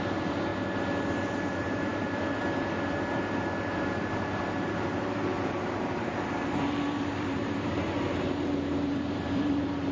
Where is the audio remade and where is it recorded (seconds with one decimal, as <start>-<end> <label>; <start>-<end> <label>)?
0.0-0.5 remade; 0.5-1.1 recorded; 1.1-9.9 remade